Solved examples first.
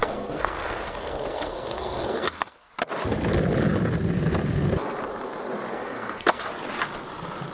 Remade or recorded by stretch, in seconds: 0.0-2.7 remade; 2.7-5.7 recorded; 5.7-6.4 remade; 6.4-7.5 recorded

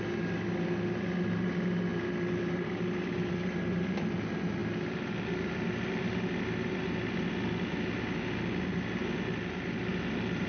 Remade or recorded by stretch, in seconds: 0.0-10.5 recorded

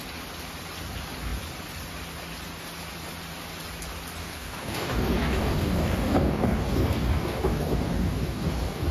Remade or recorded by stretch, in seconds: 0.0-4.2 recorded; 4.2-8.9 remade

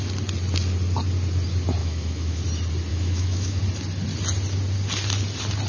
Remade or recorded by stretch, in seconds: 0.0-1.8 recorded; 1.8-2.4 remade; 2.4-2.9 recorded; 2.9-3.6 remade; 3.6-5.7 recorded

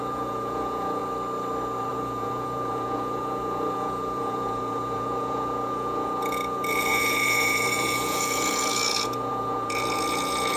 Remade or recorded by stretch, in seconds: 0.0-1.0 remade; 1.0-1.9 recorded; 1.9-10.6 remade

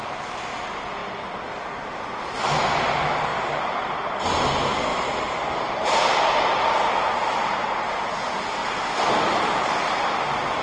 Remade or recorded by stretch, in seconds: 0.0-3.3 recorded; 3.3-4.2 remade; 4.2-4.9 recorded; 4.9-6.8 remade; 6.8-8.6 recorded; 8.6-9.5 remade; 9.5-10.6 recorded